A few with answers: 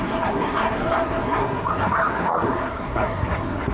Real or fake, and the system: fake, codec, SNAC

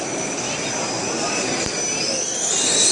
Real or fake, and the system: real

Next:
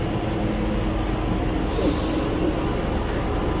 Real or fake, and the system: real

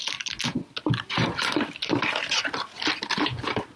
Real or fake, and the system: real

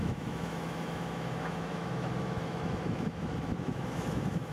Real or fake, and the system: fake, autoencoder, DAC-VAE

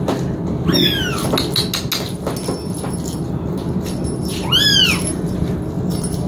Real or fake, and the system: real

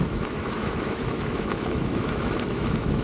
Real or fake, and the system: fake, autoencoder, DAC-VAE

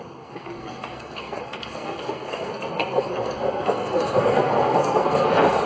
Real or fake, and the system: fake, codec, SNAC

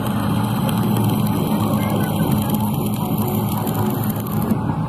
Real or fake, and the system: real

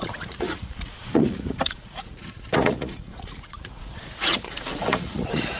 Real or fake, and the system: fake, vocoder, Vocos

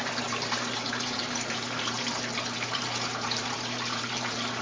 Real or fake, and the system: fake, vocoder, BigVGAN v2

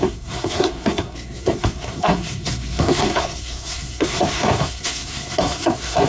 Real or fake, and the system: fake, codec, SNAC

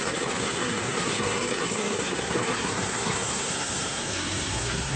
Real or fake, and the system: fake, codec, SNAC